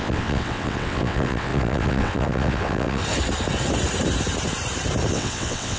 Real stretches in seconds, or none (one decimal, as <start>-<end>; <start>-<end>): 3.0-5.1